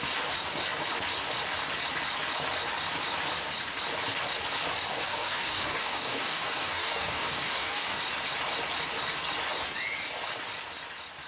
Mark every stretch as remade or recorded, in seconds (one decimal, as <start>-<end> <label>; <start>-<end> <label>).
0.0-4.9 recorded; 4.9-8.0 remade; 8.0-11.3 recorded